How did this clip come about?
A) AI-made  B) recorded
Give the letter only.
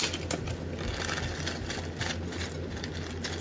B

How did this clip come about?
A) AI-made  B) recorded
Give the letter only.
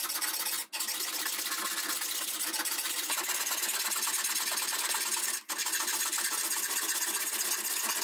B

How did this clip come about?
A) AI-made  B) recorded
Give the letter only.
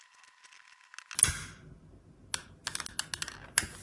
B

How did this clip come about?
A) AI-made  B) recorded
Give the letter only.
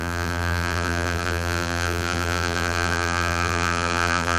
A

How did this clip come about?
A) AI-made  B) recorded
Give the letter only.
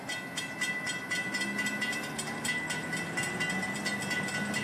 B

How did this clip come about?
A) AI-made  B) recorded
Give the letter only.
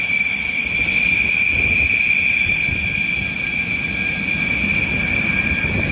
B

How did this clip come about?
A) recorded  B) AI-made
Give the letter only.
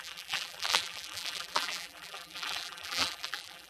B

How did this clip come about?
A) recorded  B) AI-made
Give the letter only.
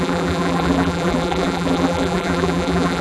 B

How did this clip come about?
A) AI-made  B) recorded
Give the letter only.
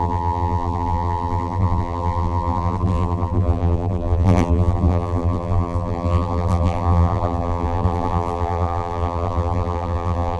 A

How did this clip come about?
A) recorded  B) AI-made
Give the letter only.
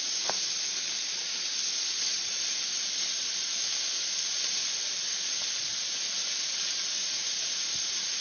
A